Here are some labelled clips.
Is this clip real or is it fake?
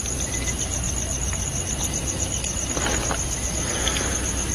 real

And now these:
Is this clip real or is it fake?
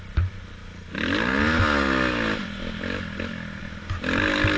real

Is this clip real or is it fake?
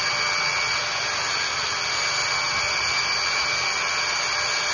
real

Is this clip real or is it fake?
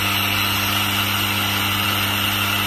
real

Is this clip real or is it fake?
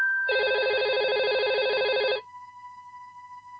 fake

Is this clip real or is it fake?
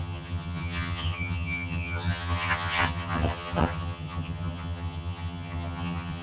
fake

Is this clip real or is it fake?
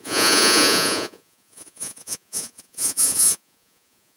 fake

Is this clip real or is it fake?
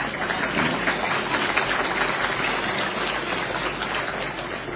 real